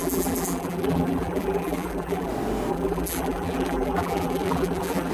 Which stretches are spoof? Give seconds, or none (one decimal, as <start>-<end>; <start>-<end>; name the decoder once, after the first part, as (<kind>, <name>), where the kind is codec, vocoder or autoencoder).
0.0-2.3 (vocoder, BigVGAN v2); 2.7-5.1